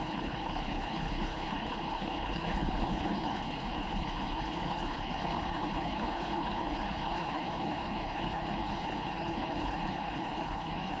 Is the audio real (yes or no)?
no